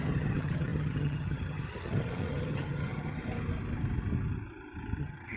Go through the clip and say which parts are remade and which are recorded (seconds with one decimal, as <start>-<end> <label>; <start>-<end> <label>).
0.0-3.2 remade; 3.2-5.0 recorded; 5.0-5.4 remade